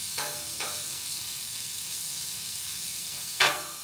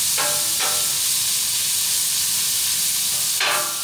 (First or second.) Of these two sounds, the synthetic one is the first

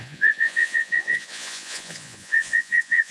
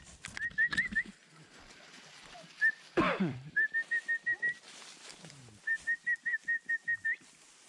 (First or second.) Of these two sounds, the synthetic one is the first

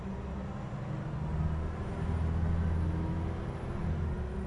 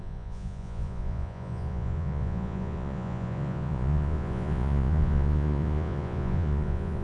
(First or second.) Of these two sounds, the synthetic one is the second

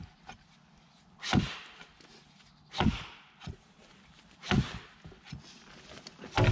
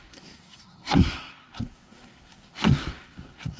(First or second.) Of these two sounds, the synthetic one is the second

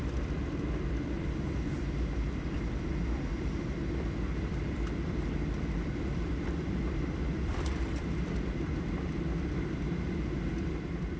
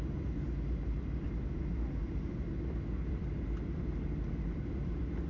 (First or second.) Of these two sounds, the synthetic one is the first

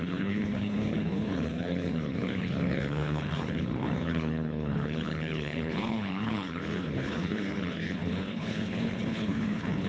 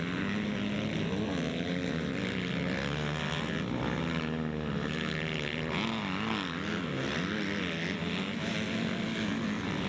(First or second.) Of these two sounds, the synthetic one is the first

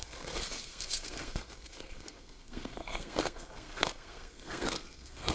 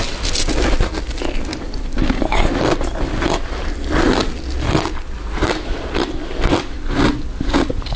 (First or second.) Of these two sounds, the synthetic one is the first